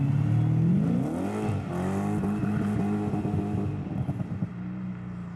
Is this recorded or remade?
recorded